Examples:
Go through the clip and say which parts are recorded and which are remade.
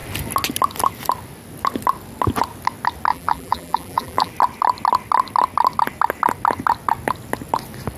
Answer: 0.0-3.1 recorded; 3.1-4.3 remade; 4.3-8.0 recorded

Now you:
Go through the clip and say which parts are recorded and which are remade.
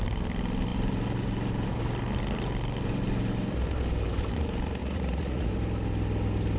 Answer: 0.0-4.8 recorded; 4.8-5.5 remade; 5.5-6.6 recorded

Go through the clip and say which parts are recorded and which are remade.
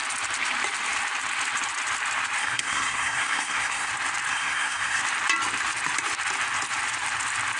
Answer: 0.0-2.4 recorded; 2.4-3.9 remade; 3.9-4.3 recorded; 4.3-5.0 remade; 5.0-7.6 recorded